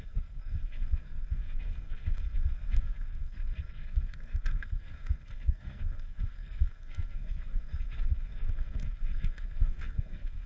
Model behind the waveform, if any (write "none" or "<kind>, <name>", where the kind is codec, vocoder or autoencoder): codec, SNAC